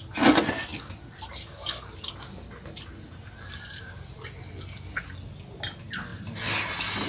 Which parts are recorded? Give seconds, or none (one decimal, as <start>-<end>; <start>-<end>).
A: 0.0-7.1